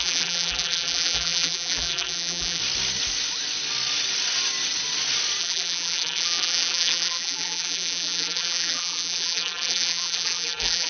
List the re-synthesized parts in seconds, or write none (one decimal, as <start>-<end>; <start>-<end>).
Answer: 0.0-2.6; 5.4-10.9